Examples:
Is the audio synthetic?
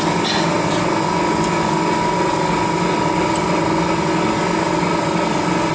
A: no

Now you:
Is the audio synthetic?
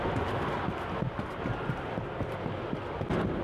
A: no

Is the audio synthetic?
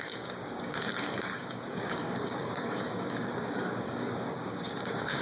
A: yes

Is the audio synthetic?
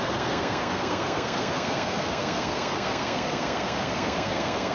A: yes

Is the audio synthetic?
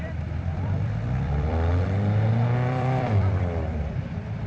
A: yes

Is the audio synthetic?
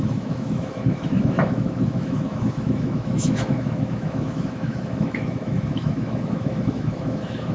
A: yes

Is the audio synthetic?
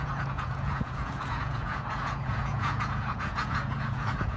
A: yes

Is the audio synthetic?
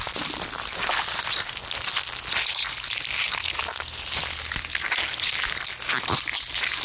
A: no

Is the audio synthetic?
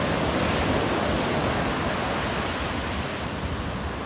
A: no